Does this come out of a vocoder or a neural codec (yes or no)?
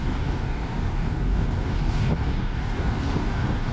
yes